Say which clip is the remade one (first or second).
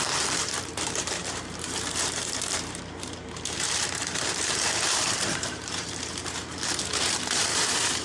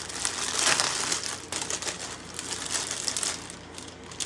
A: first